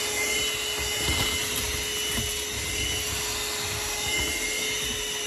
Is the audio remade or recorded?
recorded